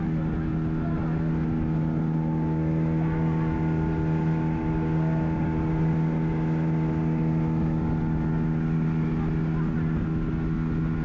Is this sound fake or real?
real